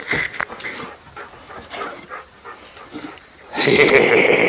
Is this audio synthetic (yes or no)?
no